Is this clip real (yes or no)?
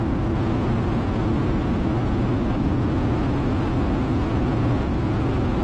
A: yes